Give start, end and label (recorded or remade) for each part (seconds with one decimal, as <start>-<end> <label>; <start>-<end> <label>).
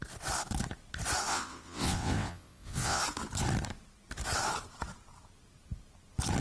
0.0-1.3 recorded; 1.3-3.0 remade; 3.0-6.4 recorded